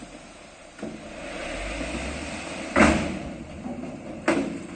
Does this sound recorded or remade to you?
recorded